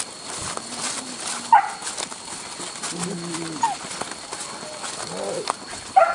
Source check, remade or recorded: recorded